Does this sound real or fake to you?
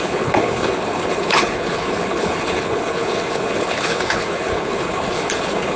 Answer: fake